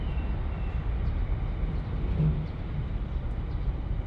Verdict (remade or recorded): recorded